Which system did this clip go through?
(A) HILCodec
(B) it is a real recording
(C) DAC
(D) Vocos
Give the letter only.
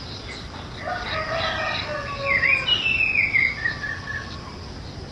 B